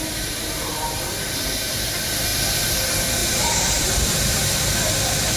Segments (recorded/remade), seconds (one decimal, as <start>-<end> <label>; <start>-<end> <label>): 0.0-3.2 recorded; 3.2-4.9 remade; 4.9-5.4 recorded